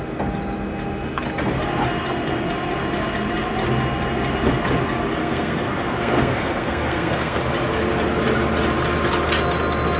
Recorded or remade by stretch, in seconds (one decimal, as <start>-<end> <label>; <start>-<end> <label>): 0.0-5.2 recorded; 5.2-7.4 remade; 7.4-10.0 recorded